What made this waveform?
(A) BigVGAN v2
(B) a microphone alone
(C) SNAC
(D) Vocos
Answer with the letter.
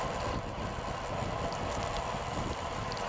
B